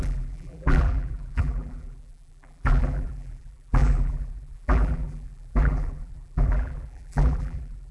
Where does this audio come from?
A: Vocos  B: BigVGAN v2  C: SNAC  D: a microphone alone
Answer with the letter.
B